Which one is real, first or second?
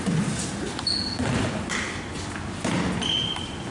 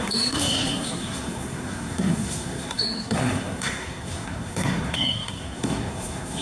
first